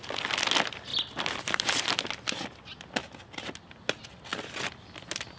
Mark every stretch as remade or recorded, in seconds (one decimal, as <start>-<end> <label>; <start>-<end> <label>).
0.0-0.9 recorded; 0.9-1.8 remade; 1.8-5.4 recorded